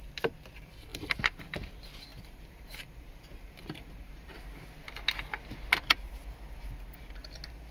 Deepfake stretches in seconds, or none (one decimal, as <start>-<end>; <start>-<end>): 0.9-1.7; 2.1-4.4